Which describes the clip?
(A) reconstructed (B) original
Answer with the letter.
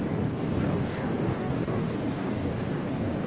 A